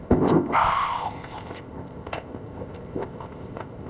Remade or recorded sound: remade